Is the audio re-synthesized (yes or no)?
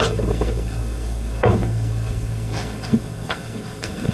yes